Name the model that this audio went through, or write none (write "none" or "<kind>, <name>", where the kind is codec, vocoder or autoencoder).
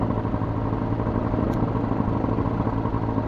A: none